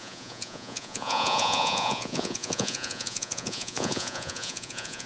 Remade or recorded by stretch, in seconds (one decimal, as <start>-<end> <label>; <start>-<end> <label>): 0.0-5.1 remade